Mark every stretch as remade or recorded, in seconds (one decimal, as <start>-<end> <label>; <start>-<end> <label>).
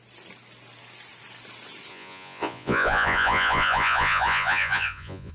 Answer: 0.0-1.9 recorded; 1.9-5.3 remade